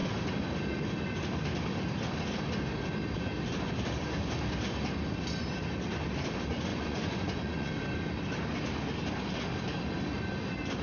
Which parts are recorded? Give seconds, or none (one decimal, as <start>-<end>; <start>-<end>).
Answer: 0.0-6.7; 7.7-10.8